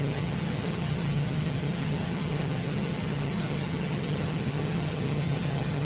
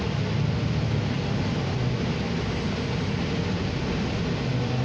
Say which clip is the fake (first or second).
first